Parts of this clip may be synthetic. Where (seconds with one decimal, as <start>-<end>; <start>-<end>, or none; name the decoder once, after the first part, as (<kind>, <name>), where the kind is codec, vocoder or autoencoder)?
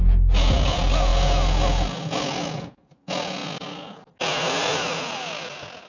none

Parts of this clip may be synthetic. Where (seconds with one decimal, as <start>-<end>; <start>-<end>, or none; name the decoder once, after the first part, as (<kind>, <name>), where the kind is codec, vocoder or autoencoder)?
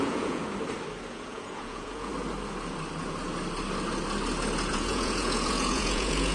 0.0-0.4 (vocoder, Vocos); 1.1-2.1; 4.7-6.3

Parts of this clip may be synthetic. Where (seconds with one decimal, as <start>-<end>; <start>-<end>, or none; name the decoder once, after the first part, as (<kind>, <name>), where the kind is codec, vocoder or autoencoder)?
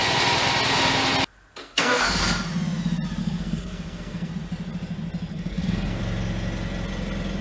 1.6-2.2 (codec, SNAC); 3.2-4.3; 5.3-6.0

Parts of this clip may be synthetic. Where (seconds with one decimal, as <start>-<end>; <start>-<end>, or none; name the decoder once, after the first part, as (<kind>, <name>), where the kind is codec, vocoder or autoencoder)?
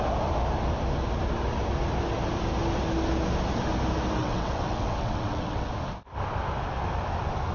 4.2-5.7 (vocoder, WaveNeXt)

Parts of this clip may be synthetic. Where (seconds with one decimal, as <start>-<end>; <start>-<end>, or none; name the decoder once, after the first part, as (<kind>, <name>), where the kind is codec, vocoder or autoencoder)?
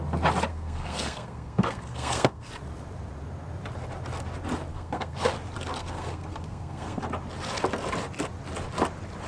0.5-2.5 (codec, SNAC); 4.7-5.3; 5.8-7.0